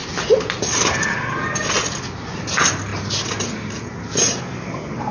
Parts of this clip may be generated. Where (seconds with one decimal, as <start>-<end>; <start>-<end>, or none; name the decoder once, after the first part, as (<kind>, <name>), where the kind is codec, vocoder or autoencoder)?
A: none